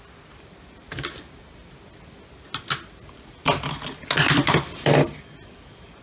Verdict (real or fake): real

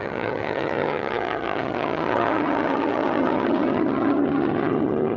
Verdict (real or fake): fake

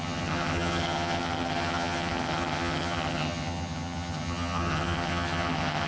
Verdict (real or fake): fake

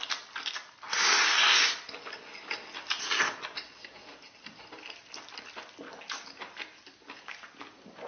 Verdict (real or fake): real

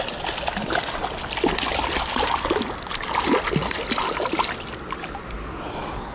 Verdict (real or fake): real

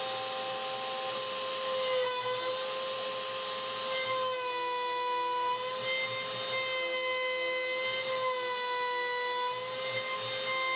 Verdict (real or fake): real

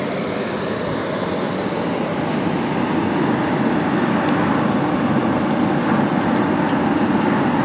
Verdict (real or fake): real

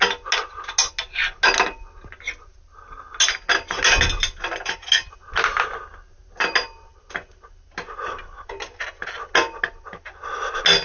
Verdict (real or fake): real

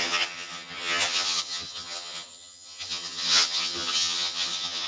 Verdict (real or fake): fake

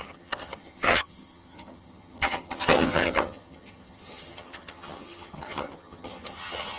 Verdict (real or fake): fake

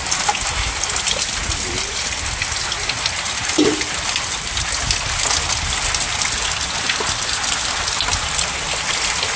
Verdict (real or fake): real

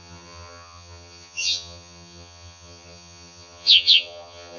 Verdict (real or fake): fake